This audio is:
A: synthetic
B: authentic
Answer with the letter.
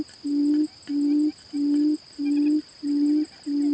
B